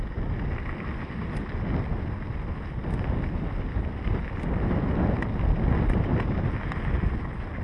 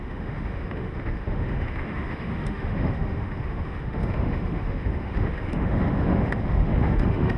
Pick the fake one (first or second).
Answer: second